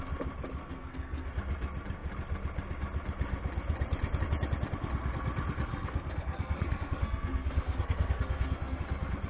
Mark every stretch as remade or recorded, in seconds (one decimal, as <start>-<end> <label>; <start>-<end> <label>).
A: 0.0-0.6 recorded; 0.6-1.3 remade; 1.3-5.7 recorded; 5.7-8.8 remade; 8.8-9.3 recorded